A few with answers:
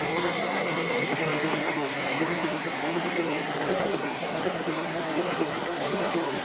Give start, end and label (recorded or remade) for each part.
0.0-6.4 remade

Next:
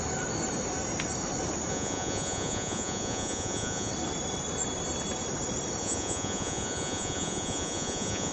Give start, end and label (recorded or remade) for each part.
0.0-1.7 recorded; 1.7-3.9 remade; 3.9-5.8 recorded; 5.8-8.3 remade